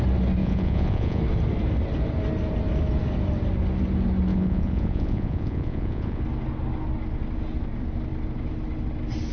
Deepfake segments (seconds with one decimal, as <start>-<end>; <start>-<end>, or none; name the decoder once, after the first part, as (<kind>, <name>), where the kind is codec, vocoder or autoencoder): 0.4-1.2 (vocoder, Vocos); 4.3-6.2